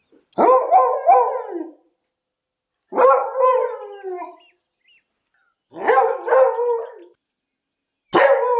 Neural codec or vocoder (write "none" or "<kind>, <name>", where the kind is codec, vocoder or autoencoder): none